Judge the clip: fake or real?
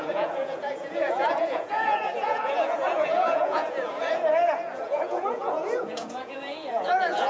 fake